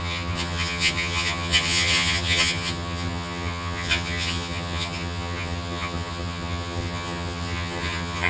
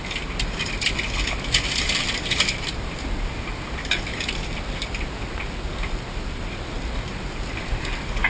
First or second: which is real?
second